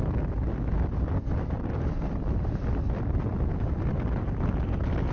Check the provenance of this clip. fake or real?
real